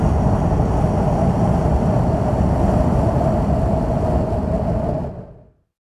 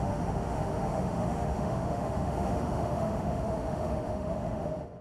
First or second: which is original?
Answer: first